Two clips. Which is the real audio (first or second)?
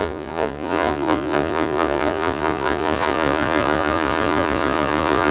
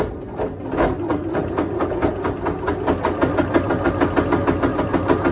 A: second